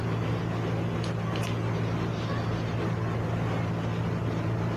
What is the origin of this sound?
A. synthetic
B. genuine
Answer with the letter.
B